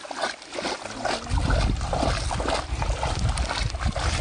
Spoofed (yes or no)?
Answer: no